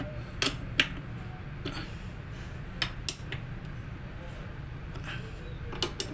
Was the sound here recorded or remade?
recorded